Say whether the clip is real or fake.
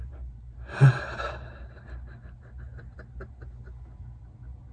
real